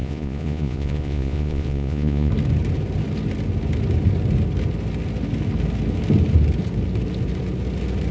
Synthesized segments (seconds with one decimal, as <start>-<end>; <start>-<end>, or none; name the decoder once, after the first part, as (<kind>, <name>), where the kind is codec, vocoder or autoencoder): 0.0-2.3 (vocoder, Vocos)